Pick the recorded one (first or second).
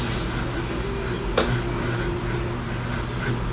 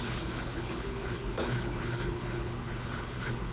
first